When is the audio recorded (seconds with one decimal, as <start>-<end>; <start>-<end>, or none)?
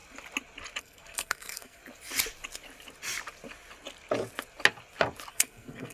0.0-0.8; 1.8-5.3